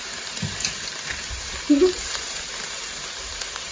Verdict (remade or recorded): remade